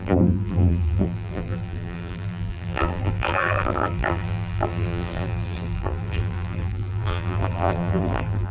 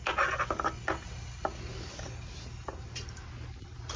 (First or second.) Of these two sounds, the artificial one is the first